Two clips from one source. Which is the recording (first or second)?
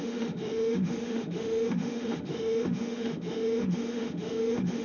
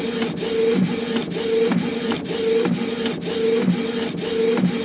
second